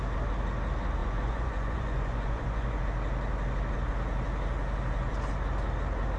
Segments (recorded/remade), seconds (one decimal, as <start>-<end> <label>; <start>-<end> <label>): 0.0-1.0 recorded; 1.0-2.8 remade; 2.8-6.2 recorded